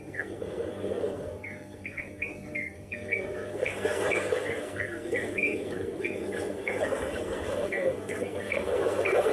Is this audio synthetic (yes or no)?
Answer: yes